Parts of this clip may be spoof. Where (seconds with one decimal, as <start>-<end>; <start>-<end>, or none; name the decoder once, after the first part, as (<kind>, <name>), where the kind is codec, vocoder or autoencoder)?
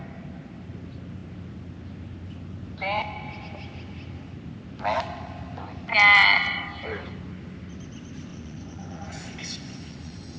8.3-10.4 (vocoder, Vocos)